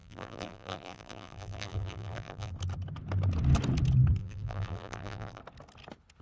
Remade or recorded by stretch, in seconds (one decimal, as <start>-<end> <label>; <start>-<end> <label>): 0.0-2.5 remade; 2.5-4.2 recorded; 4.2-5.4 remade; 5.4-6.2 recorded